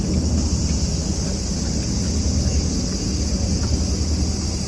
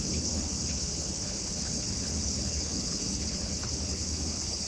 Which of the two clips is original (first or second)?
first